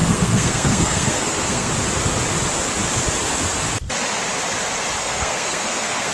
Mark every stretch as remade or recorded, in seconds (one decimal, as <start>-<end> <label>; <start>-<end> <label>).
0.0-1.7 remade; 1.7-5.0 recorded; 5.0-6.1 remade